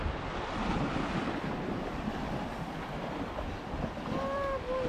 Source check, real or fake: real